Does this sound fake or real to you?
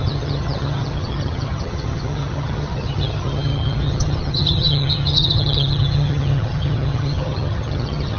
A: fake